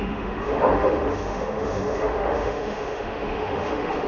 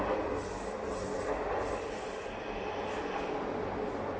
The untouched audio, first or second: second